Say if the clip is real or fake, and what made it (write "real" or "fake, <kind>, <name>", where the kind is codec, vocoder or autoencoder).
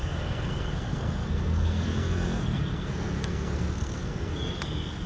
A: fake, codec, SNAC